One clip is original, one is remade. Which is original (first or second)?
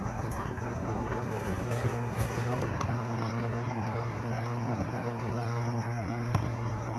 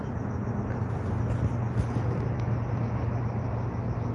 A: second